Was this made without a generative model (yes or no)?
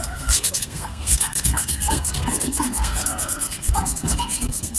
no